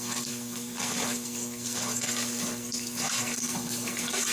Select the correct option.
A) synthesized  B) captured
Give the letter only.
A